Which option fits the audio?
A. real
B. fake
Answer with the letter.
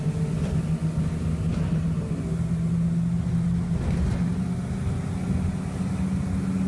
A